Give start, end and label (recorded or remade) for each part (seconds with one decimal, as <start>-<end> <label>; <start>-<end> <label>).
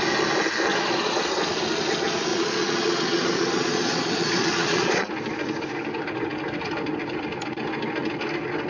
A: 0.0-0.7 recorded; 0.7-1.3 remade; 1.3-2.3 recorded; 2.3-5.1 remade; 5.1-8.7 recorded